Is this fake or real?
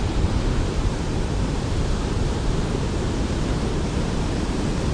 fake